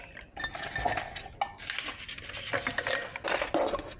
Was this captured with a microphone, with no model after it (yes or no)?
yes